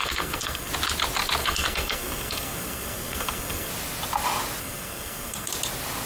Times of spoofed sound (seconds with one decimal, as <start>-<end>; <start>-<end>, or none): 0.0-0.7; 1.4-3.7; 4.6-5.5